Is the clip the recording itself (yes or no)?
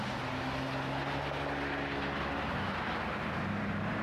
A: yes